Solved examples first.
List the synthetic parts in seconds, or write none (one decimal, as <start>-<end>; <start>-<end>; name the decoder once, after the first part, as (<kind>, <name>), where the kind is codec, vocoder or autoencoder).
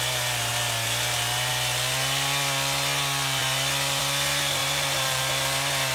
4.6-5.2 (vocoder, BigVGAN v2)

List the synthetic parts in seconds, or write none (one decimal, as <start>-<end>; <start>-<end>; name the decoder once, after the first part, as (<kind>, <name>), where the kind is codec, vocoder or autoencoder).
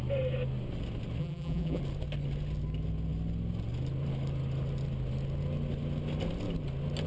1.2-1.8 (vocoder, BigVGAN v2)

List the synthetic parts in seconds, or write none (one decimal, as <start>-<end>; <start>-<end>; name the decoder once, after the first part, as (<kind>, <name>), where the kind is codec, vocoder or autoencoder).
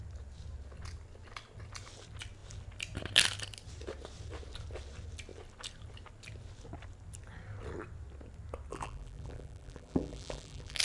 8.7-10.8 (vocoder, BigVGAN v2)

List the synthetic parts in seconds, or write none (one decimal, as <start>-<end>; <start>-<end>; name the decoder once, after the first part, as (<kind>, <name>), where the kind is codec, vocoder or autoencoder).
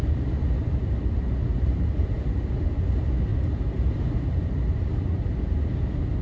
1.5-2.1 (vocoder, BigVGAN v2); 3.3-3.9